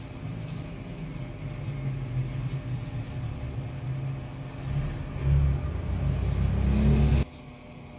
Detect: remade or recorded recorded